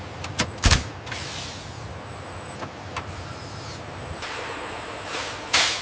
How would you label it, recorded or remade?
recorded